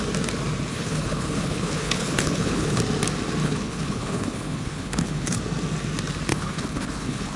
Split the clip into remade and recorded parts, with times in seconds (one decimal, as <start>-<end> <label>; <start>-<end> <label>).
0.0-0.7 recorded; 0.7-2.8 remade; 2.8-3.4 recorded; 3.4-5.4 remade; 5.4-6.3 recorded; 6.3-7.4 remade